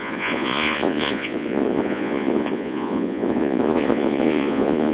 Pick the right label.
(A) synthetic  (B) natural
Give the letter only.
A